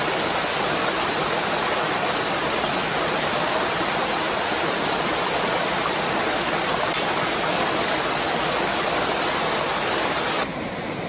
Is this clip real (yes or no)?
yes